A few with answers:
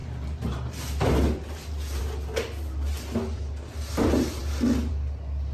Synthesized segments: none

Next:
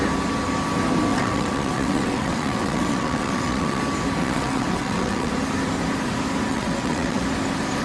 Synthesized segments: 1.1-3.8 (vocoder, WaveNeXt); 4.2-5.3; 6.5-7.2